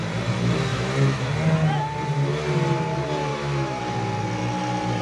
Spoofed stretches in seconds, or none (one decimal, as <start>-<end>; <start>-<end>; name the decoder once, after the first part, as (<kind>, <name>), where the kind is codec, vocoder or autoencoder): 0.7-1.3 (autoencoder, DAC-VAE); 3.3-3.8